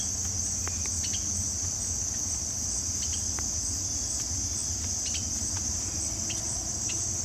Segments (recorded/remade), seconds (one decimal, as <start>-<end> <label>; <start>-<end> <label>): 0.0-7.2 recorded